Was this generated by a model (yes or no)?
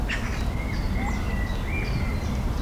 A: no